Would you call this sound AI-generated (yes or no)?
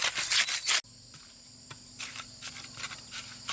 no